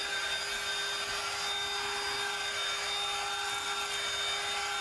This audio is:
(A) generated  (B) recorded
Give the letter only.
B